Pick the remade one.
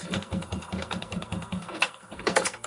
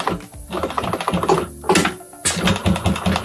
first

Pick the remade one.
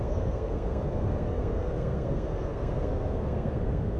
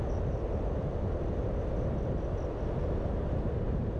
first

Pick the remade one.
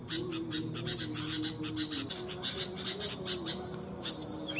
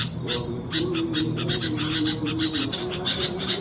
second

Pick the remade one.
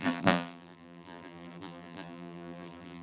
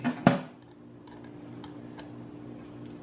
first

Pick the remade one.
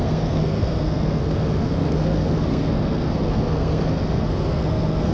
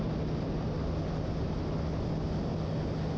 first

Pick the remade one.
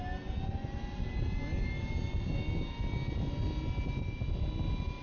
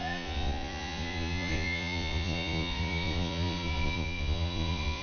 second